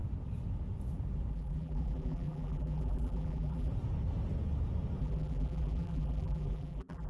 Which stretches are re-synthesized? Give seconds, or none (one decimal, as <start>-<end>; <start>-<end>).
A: 1.3-3.7; 5.0-7.1